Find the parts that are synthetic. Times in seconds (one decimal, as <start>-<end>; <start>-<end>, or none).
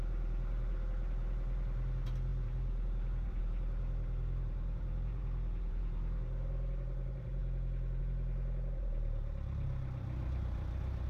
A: 0.0-7.4; 8.0-11.1